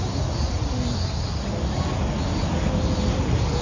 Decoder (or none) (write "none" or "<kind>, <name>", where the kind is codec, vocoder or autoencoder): none